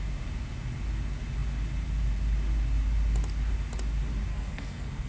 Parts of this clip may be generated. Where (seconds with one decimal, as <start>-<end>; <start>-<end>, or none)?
4.3-5.1